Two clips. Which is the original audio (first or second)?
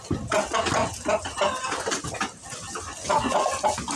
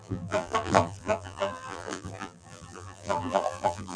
first